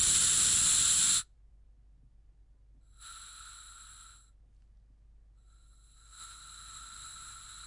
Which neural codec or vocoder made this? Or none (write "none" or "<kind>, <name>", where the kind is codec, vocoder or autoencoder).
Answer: none